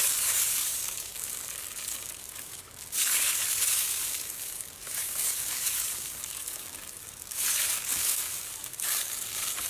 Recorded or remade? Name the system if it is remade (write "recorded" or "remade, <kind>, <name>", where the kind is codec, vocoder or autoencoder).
remade, codec, DAC